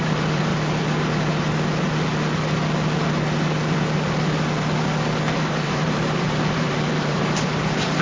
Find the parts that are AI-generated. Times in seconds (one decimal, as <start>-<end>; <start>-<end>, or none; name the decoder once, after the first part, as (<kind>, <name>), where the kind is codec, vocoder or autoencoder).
0.0-0.5 (vocoder, BigVGAN v2); 5.3-8.0